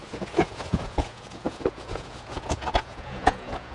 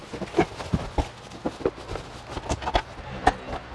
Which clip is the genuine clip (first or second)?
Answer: second